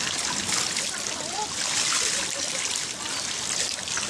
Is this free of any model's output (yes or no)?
yes